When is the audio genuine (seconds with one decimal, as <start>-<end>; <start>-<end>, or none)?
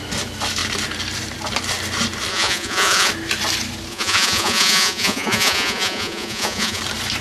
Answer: 0.0-2.3; 3.1-3.9; 6.8-7.2